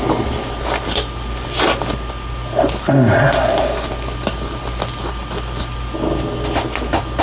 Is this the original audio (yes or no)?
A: yes